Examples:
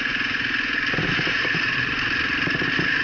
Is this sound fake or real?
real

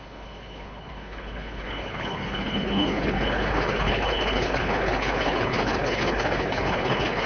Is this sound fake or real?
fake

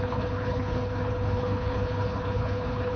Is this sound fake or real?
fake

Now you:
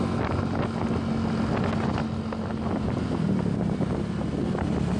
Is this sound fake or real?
real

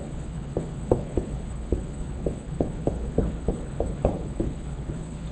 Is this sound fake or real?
fake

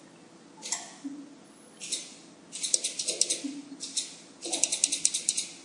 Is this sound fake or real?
real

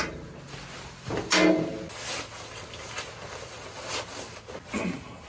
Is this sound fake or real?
real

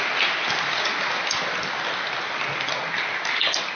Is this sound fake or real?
real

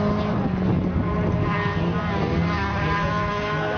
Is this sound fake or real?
real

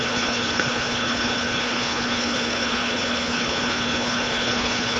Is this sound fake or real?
fake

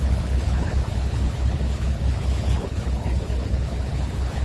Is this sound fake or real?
fake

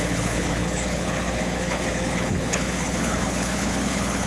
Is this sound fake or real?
fake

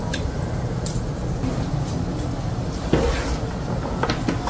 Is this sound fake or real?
real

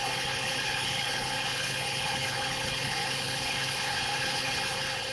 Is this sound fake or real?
fake